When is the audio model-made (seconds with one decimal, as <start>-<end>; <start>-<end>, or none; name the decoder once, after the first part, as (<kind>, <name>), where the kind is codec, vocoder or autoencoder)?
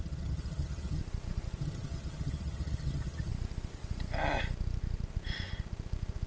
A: 0.0-1.0 (vocoder, HiFi-GAN); 1.6-3.3